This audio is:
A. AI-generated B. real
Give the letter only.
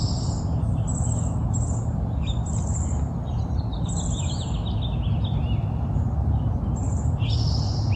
B